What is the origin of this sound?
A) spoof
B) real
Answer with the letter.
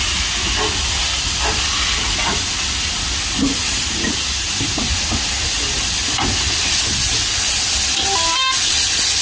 B